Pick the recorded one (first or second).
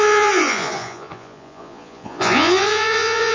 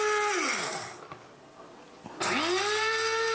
second